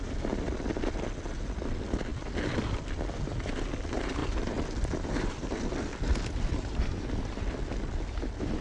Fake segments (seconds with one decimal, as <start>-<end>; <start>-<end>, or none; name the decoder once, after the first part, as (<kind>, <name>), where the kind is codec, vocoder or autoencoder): 4.2-7.0 (vocoder, BigVGAN v2)